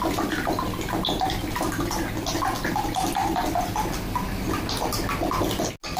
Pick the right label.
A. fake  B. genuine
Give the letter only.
B